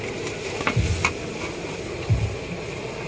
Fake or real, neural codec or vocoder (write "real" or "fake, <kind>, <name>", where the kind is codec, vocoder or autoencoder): real